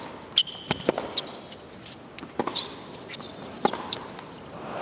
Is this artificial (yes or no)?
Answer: no